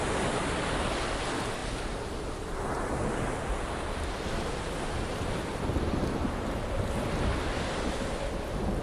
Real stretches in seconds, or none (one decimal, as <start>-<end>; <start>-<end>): 0.0-8.8